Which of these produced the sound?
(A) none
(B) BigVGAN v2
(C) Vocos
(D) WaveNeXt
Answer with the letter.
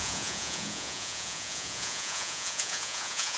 C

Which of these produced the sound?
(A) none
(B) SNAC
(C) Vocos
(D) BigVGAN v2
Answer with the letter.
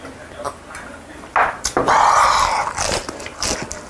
A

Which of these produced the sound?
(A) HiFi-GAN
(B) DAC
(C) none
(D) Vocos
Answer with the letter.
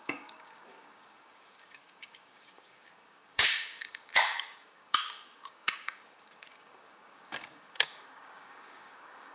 B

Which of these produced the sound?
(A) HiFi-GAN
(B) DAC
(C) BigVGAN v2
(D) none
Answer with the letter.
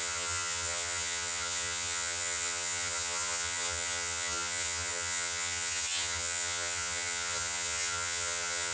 A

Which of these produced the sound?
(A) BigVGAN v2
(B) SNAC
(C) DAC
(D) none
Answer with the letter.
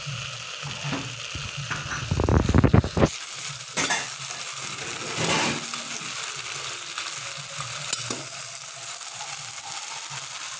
D